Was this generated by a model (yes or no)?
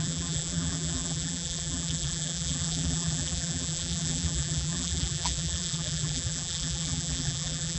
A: yes